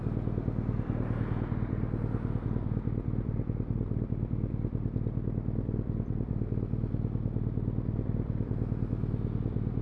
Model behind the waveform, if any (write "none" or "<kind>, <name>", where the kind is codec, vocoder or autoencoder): none